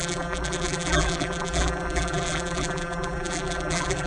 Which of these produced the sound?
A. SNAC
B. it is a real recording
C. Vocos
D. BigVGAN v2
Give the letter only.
D